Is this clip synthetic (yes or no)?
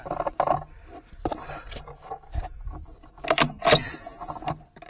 no